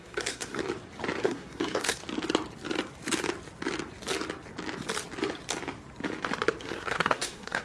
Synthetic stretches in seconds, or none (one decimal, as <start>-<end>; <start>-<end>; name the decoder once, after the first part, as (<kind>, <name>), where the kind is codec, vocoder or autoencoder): 0.0-0.6 (codec, SNAC); 1.2-2.0; 6.6-7.6